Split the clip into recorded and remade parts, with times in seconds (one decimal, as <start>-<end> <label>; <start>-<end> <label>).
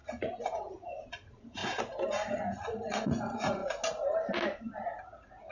0.0-1.6 remade; 1.6-2.3 recorded; 2.3-3.6 remade; 3.6-5.0 recorded; 5.0-5.5 remade